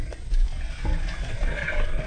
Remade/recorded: recorded